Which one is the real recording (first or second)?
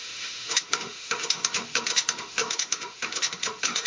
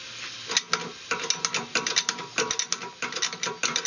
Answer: second